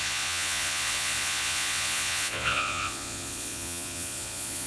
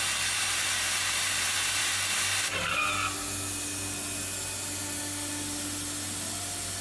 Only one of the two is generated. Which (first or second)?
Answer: first